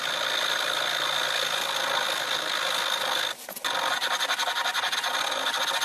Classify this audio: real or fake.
real